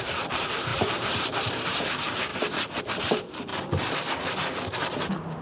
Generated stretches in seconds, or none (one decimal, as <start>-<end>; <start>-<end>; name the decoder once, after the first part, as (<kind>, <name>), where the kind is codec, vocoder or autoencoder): 0.0-2.3 (vocoder, BigVGAN v2); 3.0-3.5